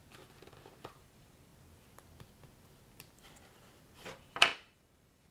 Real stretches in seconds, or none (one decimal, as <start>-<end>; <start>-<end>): 0.0-1.0; 1.5-4.1